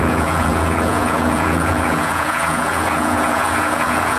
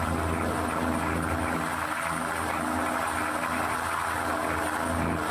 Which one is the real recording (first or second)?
second